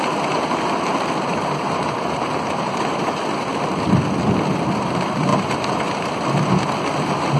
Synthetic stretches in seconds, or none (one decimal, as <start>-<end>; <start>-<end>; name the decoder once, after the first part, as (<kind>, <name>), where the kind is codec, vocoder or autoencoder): 1.3-3.2 (vocoder, BigVGAN v2); 5.3-6.1